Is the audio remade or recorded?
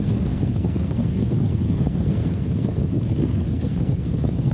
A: remade